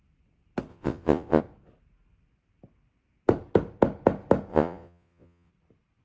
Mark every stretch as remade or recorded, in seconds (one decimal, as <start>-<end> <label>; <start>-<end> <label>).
0.0-0.7 recorded; 0.7-1.4 remade; 1.4-4.5 recorded; 4.5-5.5 remade; 5.5-6.0 recorded